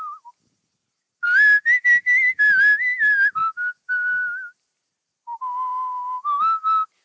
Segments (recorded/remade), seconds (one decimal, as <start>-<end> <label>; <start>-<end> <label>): 0.0-7.0 recorded